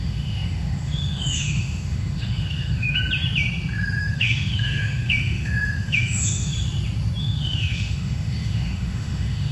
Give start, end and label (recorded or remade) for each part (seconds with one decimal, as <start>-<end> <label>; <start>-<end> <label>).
0.0-3.0 remade; 3.0-4.0 recorded; 4.0-6.5 remade; 6.5-7.2 recorded; 7.2-9.5 remade